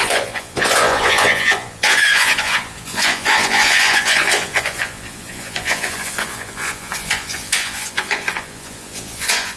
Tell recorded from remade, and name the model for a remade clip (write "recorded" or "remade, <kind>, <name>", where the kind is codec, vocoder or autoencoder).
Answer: remade, vocoder, Vocos